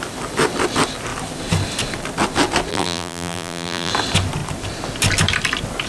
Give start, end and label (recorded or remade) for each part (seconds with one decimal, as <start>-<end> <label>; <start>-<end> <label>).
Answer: 0.0-2.7 recorded; 2.7-3.9 remade; 3.9-5.9 recorded